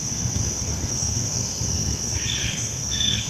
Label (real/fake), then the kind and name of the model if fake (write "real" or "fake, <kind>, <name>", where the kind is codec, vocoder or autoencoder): fake, codec, SNAC